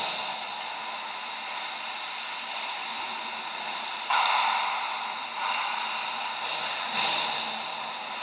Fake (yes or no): no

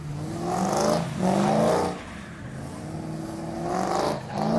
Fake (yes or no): no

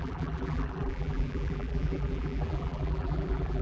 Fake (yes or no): yes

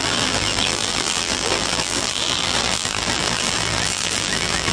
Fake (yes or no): yes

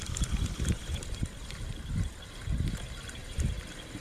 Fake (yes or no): no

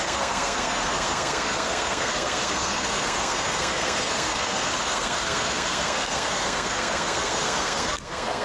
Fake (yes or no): yes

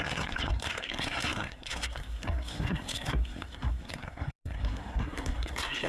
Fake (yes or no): yes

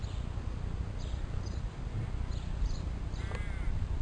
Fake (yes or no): no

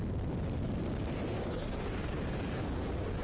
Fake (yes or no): no